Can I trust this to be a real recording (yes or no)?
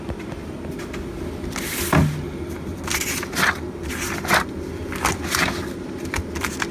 yes